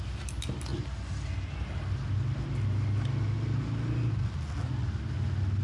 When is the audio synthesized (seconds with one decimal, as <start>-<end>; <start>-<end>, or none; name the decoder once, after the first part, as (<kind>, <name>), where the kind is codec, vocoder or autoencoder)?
none